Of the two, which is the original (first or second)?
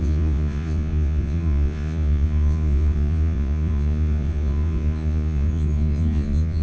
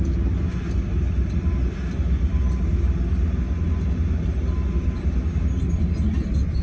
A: second